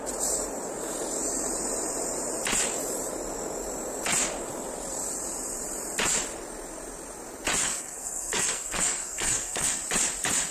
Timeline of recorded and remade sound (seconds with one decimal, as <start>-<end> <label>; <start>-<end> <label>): 0.0-7.6 recorded; 7.6-9.8 remade; 9.8-10.5 recorded